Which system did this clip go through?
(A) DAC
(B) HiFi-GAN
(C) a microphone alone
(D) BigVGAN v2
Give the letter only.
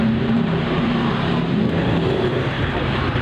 D